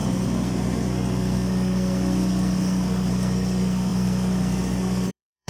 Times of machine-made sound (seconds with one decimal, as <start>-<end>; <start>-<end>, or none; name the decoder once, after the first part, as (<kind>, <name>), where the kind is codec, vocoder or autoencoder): 0.0-5.5 (codec, SNAC)